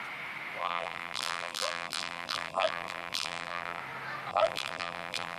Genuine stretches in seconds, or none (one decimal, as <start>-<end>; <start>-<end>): 0.0-0.6; 3.8-4.3